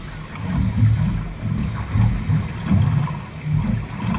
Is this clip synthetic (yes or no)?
no